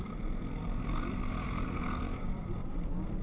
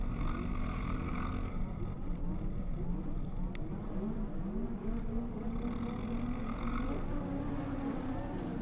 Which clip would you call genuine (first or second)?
second